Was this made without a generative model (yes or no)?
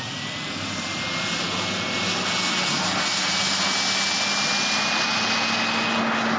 yes